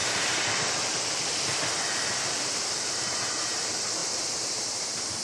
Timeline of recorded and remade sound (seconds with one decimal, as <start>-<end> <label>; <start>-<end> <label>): 0.0-2.3 recorded; 2.3-5.2 remade